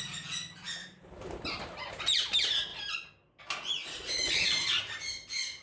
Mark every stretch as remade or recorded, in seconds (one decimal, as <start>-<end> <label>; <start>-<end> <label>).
0.0-0.8 recorded; 0.8-2.0 remade; 2.0-2.7 recorded; 2.7-3.4 remade; 3.4-3.8 recorded; 3.8-4.8 remade; 4.8-5.6 recorded